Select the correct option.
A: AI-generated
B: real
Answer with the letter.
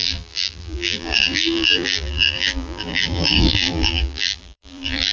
A